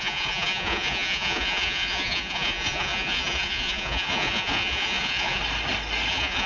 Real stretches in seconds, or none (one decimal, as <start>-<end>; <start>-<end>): 5.4-6.1